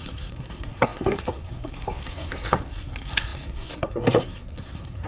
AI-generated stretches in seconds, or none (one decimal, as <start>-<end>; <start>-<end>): 0.0-5.1